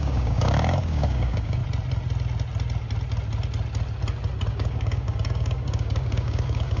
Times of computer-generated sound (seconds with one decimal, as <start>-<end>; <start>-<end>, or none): 0.0-1.6; 4.5-6.8